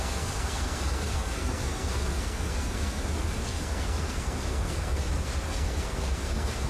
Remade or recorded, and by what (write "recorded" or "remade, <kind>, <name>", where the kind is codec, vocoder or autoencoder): remade, codec, SNAC